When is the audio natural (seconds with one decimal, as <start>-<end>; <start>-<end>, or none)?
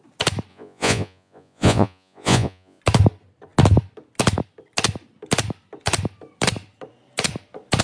0.0-0.5; 2.8-7.8